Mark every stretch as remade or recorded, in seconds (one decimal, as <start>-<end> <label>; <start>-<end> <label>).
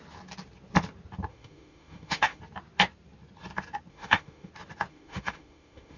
0.0-1.3 recorded; 1.3-2.4 remade; 2.4-3.9 recorded; 3.9-4.5 remade; 4.5-4.9 recorded; 4.9-6.0 remade